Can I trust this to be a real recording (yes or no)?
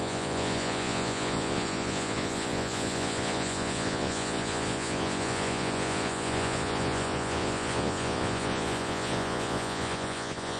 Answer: no